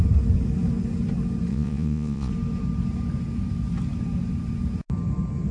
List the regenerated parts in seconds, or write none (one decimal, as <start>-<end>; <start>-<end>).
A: 1.5-2.3